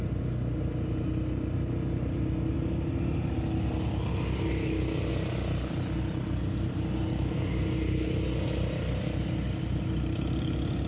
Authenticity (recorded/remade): recorded